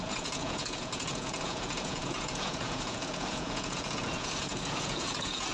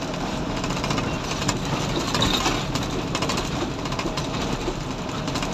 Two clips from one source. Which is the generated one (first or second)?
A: first